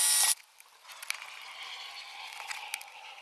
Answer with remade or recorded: recorded